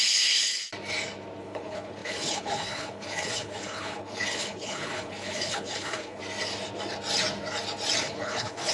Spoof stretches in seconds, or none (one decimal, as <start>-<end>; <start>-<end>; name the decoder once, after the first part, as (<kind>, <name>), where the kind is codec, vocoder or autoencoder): 0.0-0.6 (codec, HILCodec); 1.4-6.2; 8.0-8.7

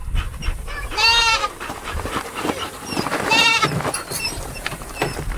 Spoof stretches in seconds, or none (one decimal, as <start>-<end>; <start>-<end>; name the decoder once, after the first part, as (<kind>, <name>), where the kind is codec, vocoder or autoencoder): 0.8-3.5 (vocoder, BigVGAN v2); 4.2-5.4

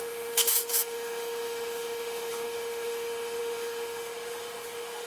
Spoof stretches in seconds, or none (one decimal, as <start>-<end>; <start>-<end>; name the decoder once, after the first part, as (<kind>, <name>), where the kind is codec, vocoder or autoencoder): 0.0-5.1 (autoencoder, DAC-VAE)

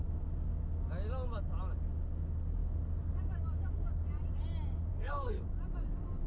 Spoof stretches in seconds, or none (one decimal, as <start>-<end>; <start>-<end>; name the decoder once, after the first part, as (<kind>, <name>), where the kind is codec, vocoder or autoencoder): 4.9-5.4 (codec, SNAC)

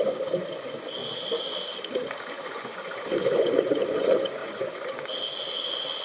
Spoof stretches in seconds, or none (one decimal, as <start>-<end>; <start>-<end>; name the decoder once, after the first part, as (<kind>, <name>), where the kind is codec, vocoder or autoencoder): 0.0-1.0 (vocoder, Vocos); 2.3-6.0

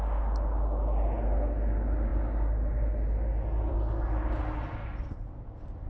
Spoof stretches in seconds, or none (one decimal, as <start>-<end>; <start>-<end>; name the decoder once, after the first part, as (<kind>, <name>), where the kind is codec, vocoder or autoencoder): none